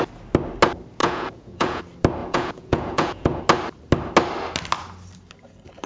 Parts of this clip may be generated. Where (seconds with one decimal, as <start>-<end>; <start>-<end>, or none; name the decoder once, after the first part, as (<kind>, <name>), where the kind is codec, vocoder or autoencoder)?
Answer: 1.0-1.8 (vocoder, Vocos); 2.2-3.4